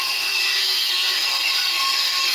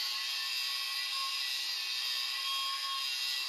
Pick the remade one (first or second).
first